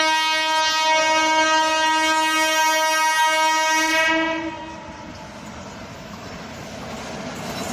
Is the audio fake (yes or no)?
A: no